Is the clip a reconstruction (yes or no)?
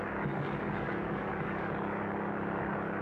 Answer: yes